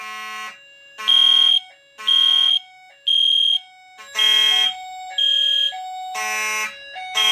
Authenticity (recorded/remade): recorded